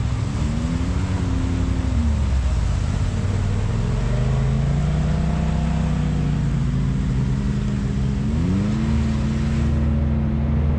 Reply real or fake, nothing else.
real